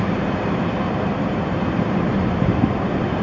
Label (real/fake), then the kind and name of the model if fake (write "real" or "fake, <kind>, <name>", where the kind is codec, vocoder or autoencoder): fake, vocoder, BigVGAN v2